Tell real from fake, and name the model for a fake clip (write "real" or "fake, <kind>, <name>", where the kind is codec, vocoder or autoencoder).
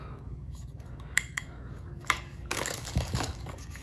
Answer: fake, codec, DAC